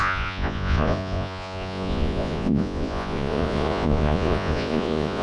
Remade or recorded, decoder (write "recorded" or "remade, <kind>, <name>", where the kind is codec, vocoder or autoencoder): remade, vocoder, Vocos